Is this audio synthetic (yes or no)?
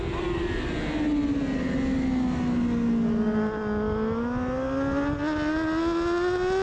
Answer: no